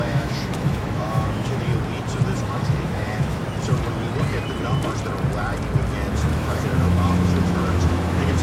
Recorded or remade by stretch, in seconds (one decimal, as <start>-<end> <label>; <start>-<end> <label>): 0.0-1.7 remade; 1.7-2.5 recorded; 2.5-3.4 remade; 3.4-6.1 recorded; 6.1-8.4 remade